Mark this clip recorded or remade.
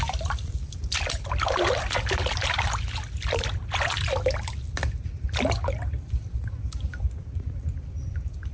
recorded